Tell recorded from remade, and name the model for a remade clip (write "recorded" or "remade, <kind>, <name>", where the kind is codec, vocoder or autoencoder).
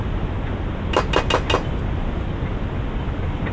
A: recorded